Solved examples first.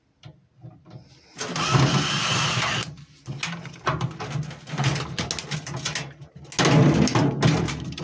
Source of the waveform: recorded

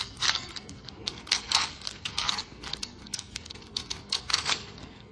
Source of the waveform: remade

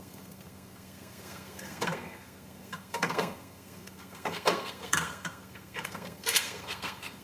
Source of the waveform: remade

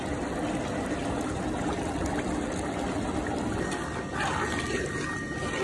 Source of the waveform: recorded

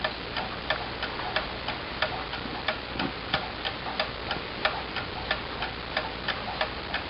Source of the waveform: recorded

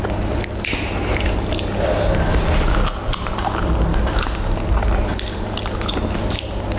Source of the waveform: recorded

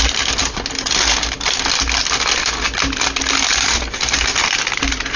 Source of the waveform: recorded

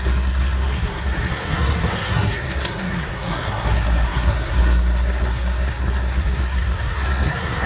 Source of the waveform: remade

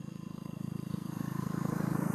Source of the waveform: remade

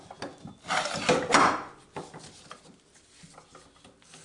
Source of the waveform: recorded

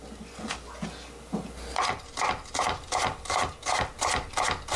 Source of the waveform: recorded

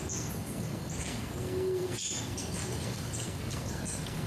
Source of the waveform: remade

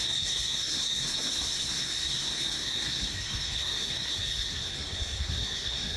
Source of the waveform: remade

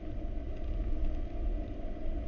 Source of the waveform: recorded